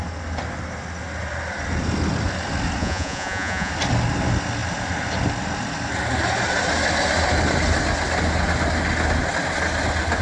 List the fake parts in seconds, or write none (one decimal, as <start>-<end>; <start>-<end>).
2.8-3.7